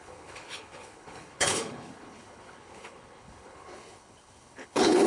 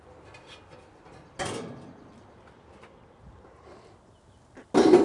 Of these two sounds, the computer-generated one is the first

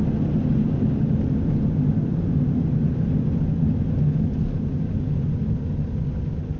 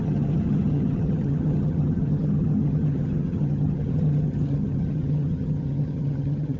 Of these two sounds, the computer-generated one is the second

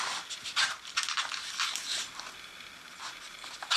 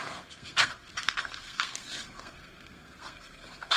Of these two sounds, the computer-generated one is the second